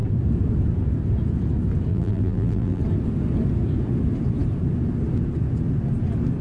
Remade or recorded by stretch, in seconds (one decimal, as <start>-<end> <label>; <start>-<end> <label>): 0.0-1.9 recorded; 1.9-2.8 remade; 2.8-6.4 recorded